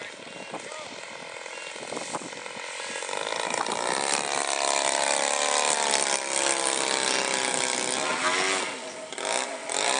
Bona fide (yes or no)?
yes